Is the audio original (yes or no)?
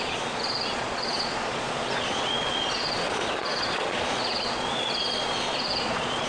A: no